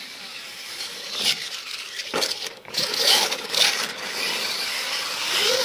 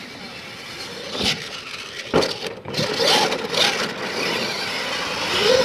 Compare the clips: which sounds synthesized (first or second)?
first